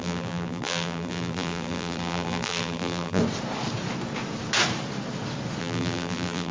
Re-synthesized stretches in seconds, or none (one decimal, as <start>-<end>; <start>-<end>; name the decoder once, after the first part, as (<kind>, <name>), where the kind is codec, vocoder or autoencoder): 0.0-3.2 (vocoder, BigVGAN v2); 5.6-6.5